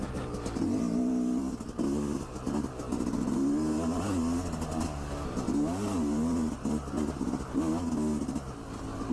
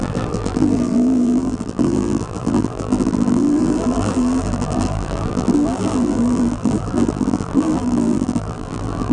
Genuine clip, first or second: first